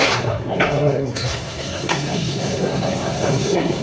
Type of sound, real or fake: fake